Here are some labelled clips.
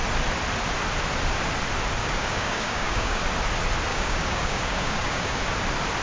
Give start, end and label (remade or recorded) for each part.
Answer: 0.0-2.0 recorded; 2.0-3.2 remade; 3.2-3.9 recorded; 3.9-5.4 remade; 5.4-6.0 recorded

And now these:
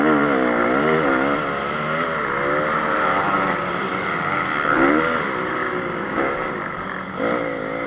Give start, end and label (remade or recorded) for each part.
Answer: 0.0-5.6 recorded; 5.6-6.5 remade; 6.5-7.9 recorded

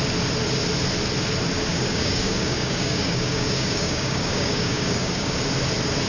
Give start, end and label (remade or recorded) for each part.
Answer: 0.0-1.7 recorded; 1.7-5.4 remade; 5.4-6.1 recorded

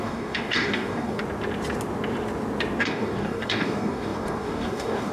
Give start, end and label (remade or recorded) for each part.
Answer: 0.0-1.2 remade; 1.2-2.8 recorded; 2.8-5.1 remade

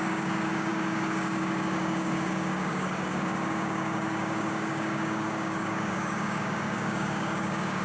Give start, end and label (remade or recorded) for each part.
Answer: 0.0-7.8 remade

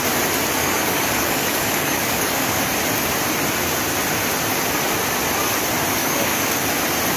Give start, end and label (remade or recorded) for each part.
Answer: 0.0-0.6 recorded; 0.6-2.6 remade; 2.6-6.0 recorded; 6.0-6.7 remade; 6.7-7.2 recorded